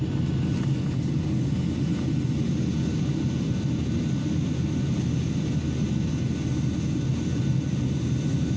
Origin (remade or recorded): recorded